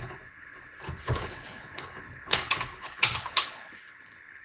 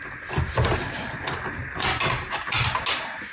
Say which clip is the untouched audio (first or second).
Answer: second